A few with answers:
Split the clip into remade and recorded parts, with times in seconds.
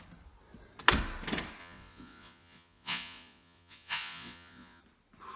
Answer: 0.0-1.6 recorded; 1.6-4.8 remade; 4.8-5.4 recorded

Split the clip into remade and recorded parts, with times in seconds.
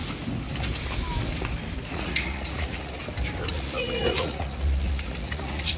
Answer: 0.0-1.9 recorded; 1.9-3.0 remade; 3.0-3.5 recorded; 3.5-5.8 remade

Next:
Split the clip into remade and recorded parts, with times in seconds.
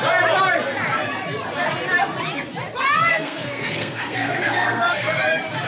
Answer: 0.0-3.1 recorded; 3.1-5.2 remade; 5.2-5.7 recorded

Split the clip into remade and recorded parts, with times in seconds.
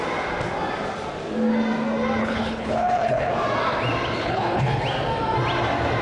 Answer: 0.0-2.2 recorded; 2.2-3.3 remade; 3.3-4.2 recorded; 4.2-4.8 remade; 4.8-6.0 recorded